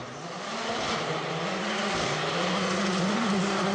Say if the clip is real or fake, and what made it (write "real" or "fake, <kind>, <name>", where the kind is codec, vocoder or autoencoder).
real